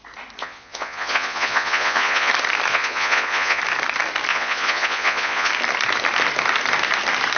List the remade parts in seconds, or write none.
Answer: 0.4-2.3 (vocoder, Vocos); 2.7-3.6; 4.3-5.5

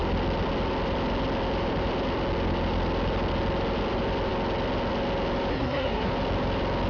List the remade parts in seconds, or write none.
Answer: 5.5-6.1 (codec, SNAC)

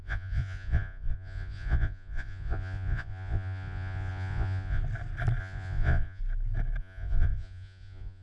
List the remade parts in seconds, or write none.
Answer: 0.0-4.8 (vocoder, Vocos); 5.4-6.2; 6.8-8.2